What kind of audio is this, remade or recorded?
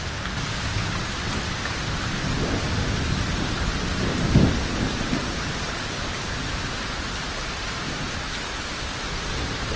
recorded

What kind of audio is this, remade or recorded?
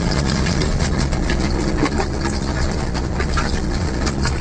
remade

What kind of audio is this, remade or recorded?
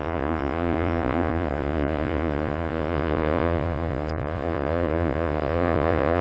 remade